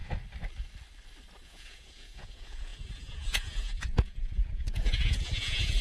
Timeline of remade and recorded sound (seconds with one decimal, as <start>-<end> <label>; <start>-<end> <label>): 0.0-1.4 recorded; 1.4-5.8 remade